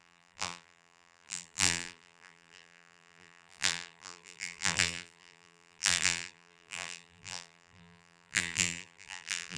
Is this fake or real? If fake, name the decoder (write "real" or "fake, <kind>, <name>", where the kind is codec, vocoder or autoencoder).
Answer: fake, vocoder, BigVGAN v2